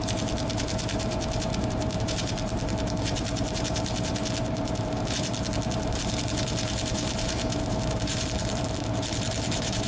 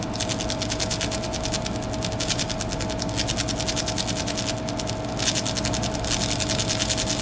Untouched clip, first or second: second